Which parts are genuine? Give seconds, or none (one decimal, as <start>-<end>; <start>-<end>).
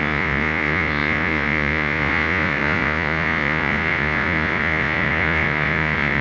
none